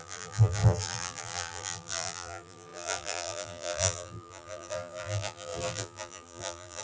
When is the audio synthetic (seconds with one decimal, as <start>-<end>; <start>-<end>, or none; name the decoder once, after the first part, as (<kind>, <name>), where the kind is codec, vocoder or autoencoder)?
0.0-6.8 (vocoder, BigVGAN v2)